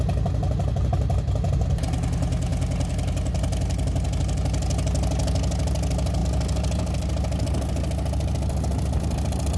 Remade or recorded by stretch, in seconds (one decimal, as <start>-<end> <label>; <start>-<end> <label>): 0.0-9.6 recorded